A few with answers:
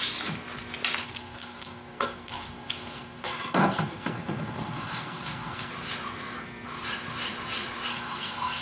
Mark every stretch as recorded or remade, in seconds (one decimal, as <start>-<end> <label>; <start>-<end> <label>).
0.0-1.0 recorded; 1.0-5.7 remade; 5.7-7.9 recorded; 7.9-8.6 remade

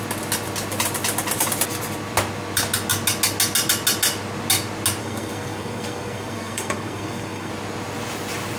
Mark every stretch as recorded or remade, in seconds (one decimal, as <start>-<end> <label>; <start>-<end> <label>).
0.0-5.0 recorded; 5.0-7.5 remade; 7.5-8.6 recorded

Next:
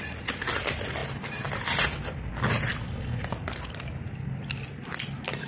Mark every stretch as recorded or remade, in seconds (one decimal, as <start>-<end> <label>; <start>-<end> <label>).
0.0-5.5 recorded

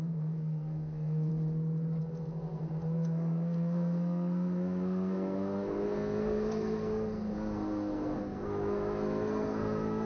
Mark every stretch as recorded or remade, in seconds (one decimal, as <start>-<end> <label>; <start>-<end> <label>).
0.0-1.3 remade; 1.3-2.0 recorded; 2.0-10.1 remade

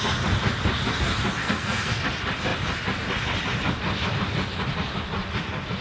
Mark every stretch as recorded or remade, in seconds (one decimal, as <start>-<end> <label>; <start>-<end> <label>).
0.0-1.4 recorded; 1.4-2.0 remade; 2.0-5.8 recorded

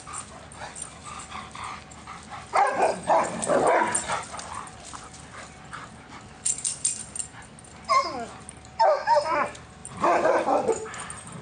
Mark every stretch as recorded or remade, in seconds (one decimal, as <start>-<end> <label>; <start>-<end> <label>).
0.0-11.4 recorded

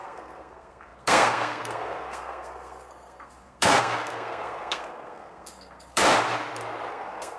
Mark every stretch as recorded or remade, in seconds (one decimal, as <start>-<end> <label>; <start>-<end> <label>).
0.0-6.0 remade; 6.0-6.9 recorded; 6.9-7.4 remade

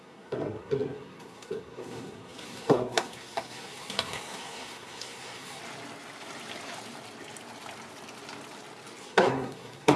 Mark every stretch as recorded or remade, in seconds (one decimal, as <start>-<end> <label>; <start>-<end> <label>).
0.0-5.6 remade; 5.6-9.0 recorded; 9.0-10.0 remade